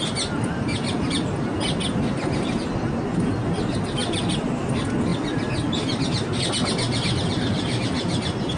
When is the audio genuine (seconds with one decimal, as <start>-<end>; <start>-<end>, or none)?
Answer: 0.0-8.6

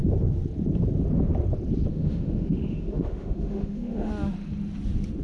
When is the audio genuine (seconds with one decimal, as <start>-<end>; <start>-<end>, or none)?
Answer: 0.0-1.9; 4.1-5.2